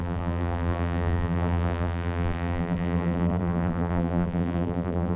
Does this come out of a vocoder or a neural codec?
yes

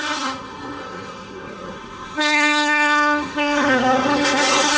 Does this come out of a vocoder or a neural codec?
yes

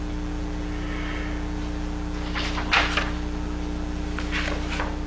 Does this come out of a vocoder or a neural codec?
no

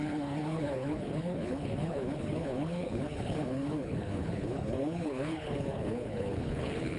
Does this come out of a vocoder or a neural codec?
yes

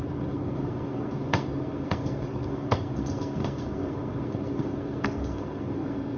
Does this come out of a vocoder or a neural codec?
yes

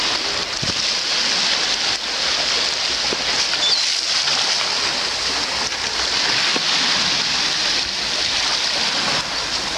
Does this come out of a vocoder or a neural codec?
no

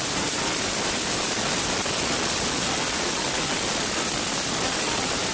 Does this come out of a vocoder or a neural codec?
no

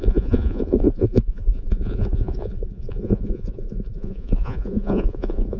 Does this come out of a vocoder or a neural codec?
yes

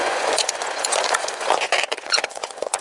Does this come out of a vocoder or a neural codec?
yes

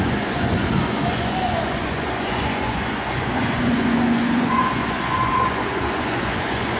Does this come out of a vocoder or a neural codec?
yes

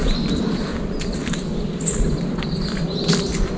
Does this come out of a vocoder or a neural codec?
no